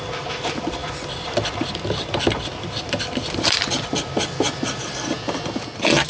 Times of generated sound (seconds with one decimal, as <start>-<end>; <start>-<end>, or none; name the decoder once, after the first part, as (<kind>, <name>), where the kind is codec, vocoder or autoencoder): none